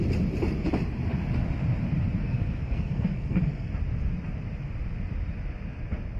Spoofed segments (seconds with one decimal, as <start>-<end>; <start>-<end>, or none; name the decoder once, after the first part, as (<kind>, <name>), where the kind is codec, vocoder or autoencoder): 2.2-3.7 (codec, SNAC)